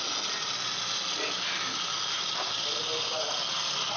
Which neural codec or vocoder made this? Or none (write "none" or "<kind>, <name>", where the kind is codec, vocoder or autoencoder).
none